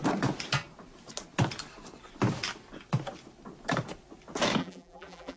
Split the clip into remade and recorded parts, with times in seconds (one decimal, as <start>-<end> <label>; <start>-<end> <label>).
0.0-4.6 recorded; 4.6-5.4 remade